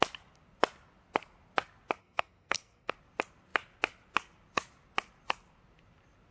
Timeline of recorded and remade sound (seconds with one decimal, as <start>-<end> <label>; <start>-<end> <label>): 0.0-2.0 recorded; 2.0-2.9 remade; 2.9-6.3 recorded